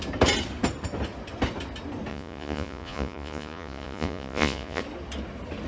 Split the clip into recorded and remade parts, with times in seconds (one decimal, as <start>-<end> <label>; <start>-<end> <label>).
0.0-2.1 recorded; 2.1-4.8 remade; 4.8-5.7 recorded